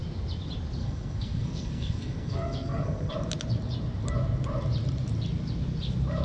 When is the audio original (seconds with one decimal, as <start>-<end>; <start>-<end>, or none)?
0.0-0.8; 3.1-6.2